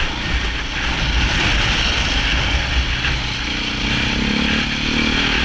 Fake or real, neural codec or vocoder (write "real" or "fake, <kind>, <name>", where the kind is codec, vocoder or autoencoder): real